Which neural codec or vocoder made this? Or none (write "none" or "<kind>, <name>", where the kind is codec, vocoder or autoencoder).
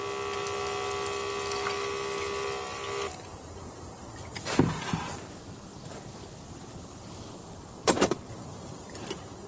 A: none